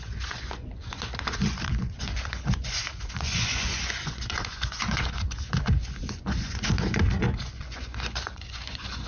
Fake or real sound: fake